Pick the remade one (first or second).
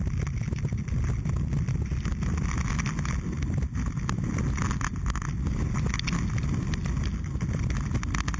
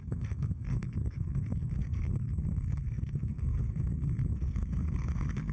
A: second